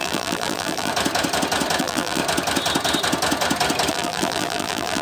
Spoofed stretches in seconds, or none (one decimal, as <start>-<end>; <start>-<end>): 0.0-0.9; 1.8-2.2; 3.9-5.0